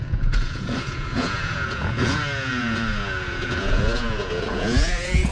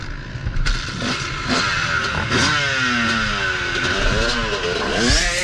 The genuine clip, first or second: second